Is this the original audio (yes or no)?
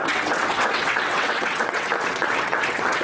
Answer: no